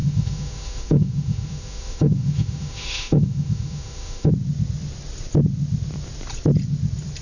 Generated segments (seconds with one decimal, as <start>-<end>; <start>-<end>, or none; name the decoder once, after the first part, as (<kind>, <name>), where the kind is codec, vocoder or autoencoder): 0.0-4.3 (autoencoder, DAC-VAE)